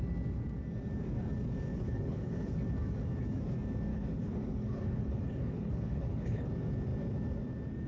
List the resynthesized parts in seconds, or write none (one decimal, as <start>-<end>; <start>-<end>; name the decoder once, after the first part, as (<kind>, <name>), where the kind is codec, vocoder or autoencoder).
1.7-2.5 (codec, HILCodec); 3.9-6.5

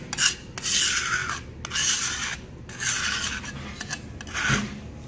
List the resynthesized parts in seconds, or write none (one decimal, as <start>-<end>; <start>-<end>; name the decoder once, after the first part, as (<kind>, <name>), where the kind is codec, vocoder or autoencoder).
none

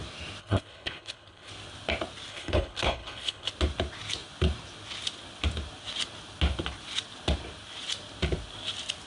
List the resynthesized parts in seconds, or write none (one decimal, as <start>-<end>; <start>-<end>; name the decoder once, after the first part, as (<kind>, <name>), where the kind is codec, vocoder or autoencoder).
0.4-1.5 (codec, HILCodec); 2.3-3.5

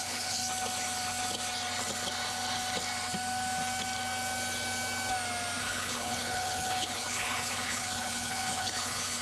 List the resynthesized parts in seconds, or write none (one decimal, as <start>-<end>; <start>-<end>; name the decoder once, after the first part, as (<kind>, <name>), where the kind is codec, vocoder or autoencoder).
0.0-0.4 (codec, HILCodec); 5.6-9.2

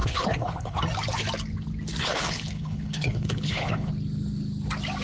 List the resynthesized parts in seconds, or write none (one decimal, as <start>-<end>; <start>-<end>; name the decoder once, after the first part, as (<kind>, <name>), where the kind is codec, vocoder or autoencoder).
0.0-0.8 (codec, HILCodec); 2.0-3.9

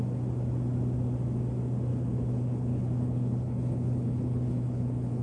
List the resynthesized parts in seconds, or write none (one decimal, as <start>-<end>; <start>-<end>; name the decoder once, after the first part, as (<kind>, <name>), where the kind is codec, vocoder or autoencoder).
1.9-5.2 (codec, HILCodec)

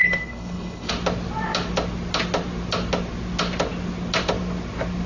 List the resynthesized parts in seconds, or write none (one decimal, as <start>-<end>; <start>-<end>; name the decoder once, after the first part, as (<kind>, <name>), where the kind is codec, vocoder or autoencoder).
0.0-0.9 (codec, HILCodec)

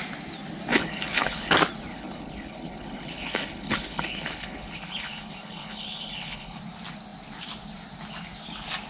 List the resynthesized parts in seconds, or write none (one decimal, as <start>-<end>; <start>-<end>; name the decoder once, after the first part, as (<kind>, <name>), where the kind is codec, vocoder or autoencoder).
0.7-1.5 (codec, HILCodec); 1.9-6.6